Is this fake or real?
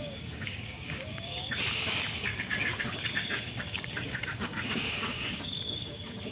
fake